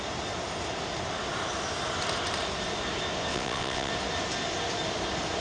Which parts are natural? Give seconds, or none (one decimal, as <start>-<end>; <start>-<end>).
0.0-3.3; 3.9-5.4